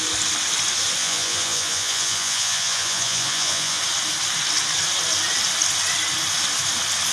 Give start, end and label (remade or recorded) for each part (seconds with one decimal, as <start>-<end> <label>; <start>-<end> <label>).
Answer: 0.0-1.0 recorded; 1.0-3.8 remade; 3.8-7.1 recorded